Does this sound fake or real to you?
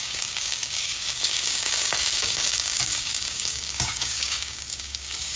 fake